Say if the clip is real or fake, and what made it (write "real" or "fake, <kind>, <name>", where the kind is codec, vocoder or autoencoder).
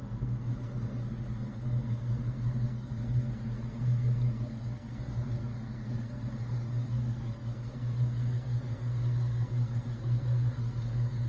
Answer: fake, codec, SNAC